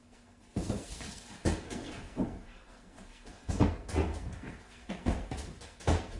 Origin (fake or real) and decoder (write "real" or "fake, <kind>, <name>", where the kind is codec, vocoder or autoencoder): fake, codec, SNAC